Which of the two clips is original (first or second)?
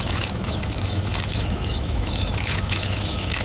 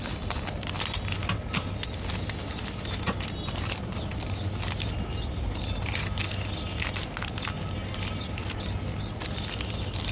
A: second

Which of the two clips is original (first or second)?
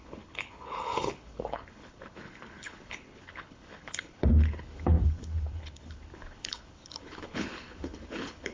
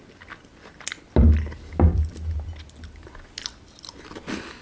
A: second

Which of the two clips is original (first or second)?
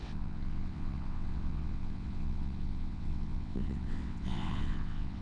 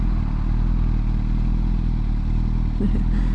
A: second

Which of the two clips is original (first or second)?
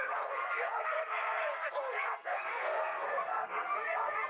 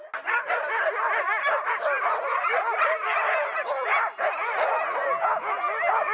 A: second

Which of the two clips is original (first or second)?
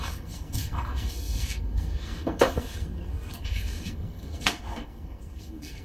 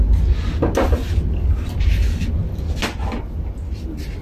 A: second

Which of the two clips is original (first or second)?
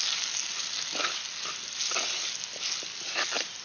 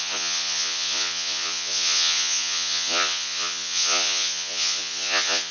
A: first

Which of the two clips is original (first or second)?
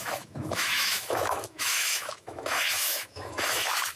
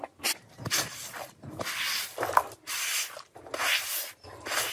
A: second